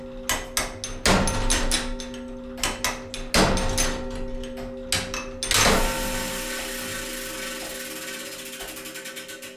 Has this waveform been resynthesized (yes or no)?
no